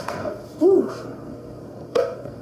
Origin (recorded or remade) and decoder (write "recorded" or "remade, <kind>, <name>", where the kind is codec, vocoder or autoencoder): remade, codec, SNAC